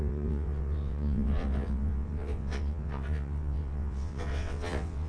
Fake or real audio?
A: fake